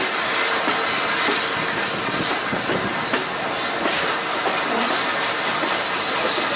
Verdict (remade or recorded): recorded